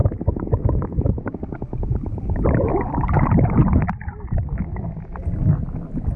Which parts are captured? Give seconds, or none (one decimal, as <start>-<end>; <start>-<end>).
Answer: 0.8-6.2